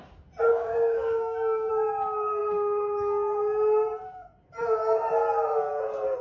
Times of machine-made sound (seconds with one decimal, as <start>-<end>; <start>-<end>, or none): 0.5-1.7